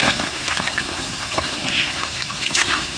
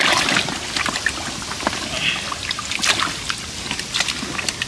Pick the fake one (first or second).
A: first